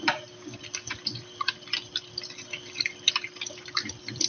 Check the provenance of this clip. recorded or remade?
remade